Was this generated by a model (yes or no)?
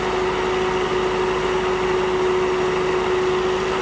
no